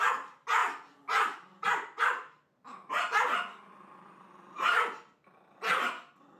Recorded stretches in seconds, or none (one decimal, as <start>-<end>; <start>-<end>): 0.0-6.4